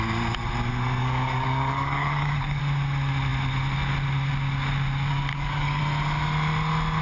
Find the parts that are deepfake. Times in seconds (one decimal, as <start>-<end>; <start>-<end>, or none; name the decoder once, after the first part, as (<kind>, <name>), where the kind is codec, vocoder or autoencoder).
1.0-2.6 (codec, DAC); 5.3-5.8